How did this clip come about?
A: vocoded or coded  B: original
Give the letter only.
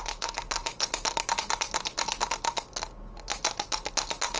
B